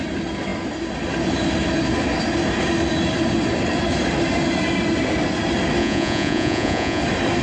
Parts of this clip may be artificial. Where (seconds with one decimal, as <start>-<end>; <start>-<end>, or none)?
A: 5.8-7.0